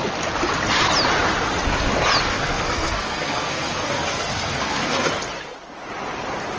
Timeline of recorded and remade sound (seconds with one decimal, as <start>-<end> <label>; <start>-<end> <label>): 0.0-2.3 recorded; 2.3-5.1 remade; 5.1-6.6 recorded